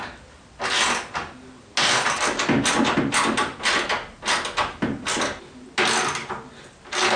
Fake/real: real